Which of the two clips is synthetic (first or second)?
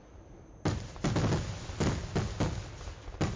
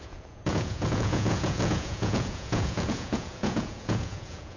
second